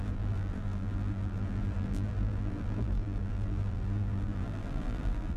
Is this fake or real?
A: fake